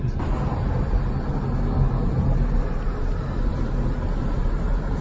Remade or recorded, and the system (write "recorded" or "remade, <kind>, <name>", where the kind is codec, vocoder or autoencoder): recorded